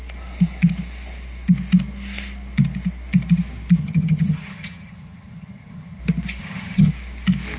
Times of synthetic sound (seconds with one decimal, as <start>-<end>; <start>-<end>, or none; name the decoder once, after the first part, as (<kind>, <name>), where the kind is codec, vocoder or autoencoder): 3.8-6.0 (vocoder, HiFi-GAN); 6.4-6.9